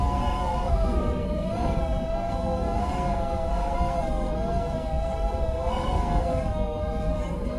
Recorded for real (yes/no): no